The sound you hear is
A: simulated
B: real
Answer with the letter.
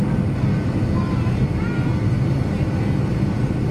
B